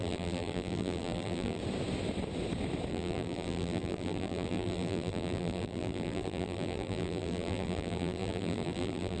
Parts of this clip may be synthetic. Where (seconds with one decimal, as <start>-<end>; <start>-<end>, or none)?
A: 0.0-1.6; 2.9-9.2